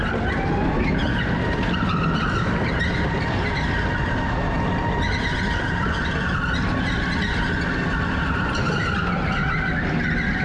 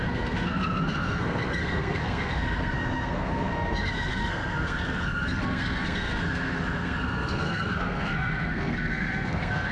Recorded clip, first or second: first